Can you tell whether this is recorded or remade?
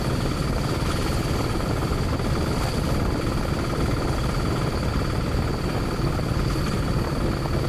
recorded